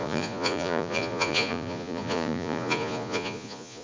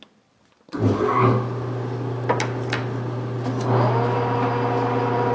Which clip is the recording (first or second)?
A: second